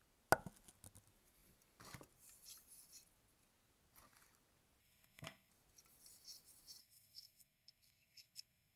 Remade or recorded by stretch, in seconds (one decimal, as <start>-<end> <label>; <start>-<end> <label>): 0.0-4.8 recorded; 4.8-5.5 remade; 5.5-6.8 recorded; 6.8-8.8 remade